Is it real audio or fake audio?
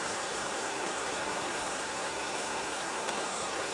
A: fake